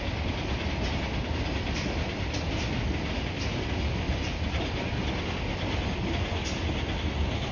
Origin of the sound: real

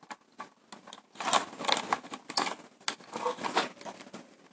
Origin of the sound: real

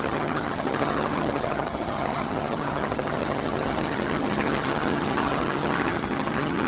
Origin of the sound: fake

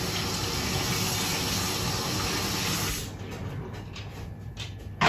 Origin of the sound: real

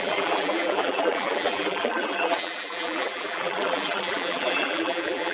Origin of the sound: fake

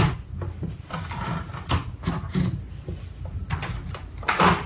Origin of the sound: real